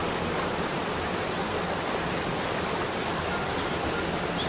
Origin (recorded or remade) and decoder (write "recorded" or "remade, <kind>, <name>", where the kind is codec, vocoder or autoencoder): recorded